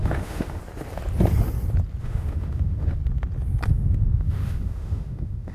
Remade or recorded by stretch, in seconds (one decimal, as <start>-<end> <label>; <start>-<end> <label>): 0.0-0.6 remade; 0.6-2.0 recorded; 2.0-3.0 remade; 3.0-3.7 recorded; 3.7-5.5 remade